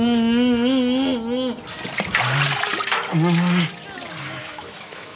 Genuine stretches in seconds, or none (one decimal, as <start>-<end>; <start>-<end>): 0.0-4.4